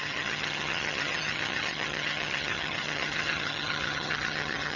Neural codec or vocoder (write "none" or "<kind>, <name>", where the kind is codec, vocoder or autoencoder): vocoder, HiFi-GAN